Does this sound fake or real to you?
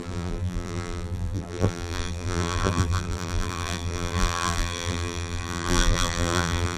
fake